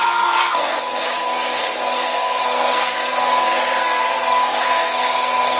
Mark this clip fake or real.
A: fake